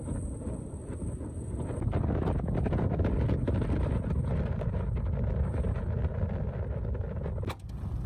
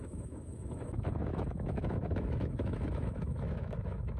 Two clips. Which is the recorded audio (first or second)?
first